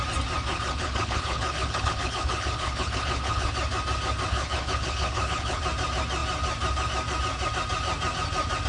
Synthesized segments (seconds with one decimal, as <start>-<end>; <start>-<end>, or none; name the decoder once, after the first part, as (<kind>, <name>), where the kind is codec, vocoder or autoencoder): 0.5-3.5 (codec, HILCodec); 4.3-5.6